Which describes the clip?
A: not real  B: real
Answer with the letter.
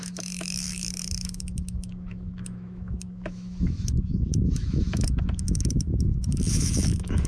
A